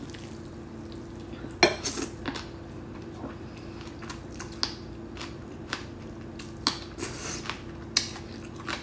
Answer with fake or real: real